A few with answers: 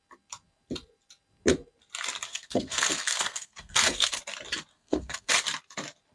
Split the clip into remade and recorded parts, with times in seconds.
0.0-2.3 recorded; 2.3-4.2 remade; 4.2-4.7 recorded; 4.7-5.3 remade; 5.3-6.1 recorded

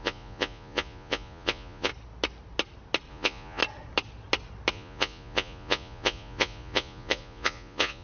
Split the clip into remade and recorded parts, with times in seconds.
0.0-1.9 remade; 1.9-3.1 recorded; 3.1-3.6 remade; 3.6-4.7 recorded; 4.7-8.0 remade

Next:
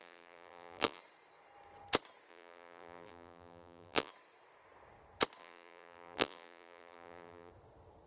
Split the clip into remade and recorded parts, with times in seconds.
0.0-1.0 remade; 1.0-2.3 recorded; 2.3-4.1 remade; 4.1-5.4 recorded; 5.4-7.5 remade; 7.5-8.1 recorded

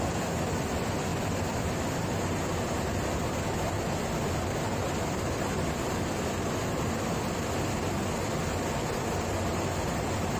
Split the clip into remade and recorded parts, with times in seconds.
0.0-10.4 recorded